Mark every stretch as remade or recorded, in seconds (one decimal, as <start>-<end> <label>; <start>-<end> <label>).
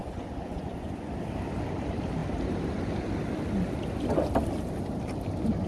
0.0-1.1 remade; 1.1-5.7 recorded